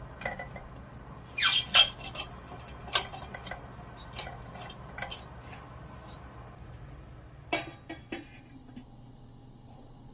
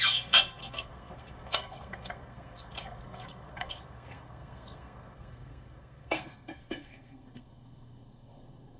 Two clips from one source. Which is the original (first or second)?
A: first